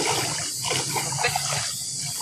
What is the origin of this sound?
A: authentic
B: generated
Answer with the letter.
A